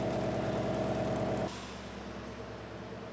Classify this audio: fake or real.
real